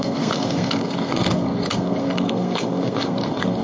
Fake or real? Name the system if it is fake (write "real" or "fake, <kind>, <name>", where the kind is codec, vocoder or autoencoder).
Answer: fake, codec, SNAC